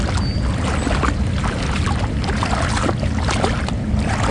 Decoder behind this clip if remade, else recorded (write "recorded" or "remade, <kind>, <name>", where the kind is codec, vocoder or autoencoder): recorded